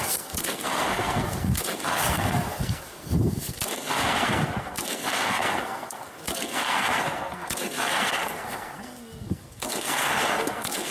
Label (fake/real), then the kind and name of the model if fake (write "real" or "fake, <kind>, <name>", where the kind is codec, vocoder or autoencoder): fake, codec, SNAC